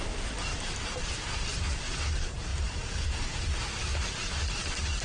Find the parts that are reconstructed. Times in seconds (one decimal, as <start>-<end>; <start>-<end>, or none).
0.0-3.9